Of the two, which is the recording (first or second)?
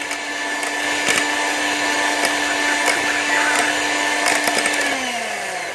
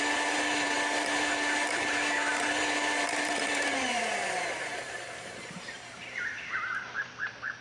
first